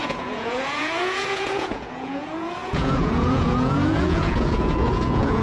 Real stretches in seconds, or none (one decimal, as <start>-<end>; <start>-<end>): none